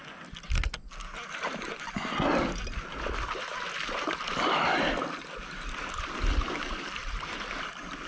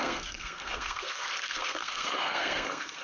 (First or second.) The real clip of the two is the first